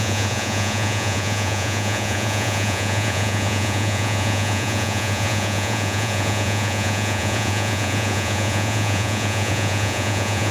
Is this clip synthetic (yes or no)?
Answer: yes